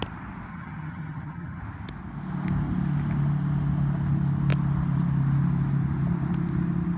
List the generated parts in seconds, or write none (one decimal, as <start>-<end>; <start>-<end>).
0.5-1.6